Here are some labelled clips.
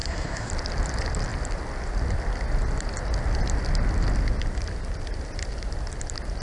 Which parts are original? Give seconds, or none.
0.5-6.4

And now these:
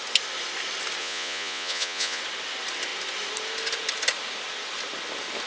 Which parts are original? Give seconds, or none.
0.0-1.0; 2.2-5.5

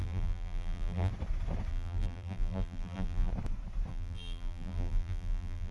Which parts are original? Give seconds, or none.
1.1-1.7; 3.3-3.9

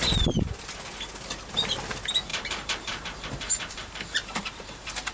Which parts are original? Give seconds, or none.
0.0-2.3